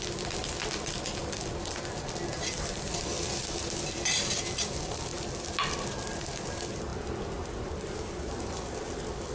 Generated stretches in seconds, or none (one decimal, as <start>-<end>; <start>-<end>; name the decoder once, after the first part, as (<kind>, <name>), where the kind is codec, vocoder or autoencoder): 0.0-5.1 (vocoder, BigVGAN v2); 6.1-9.3